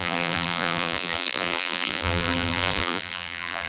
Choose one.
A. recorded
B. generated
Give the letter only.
B